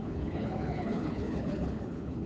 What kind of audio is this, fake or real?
fake